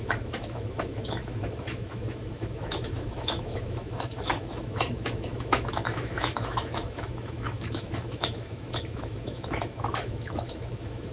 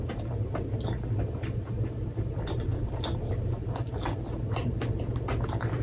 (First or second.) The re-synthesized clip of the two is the first